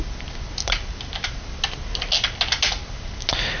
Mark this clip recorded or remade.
recorded